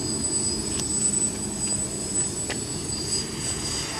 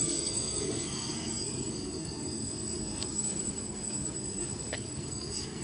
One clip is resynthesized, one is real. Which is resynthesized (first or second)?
second